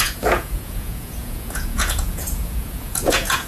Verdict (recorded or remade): remade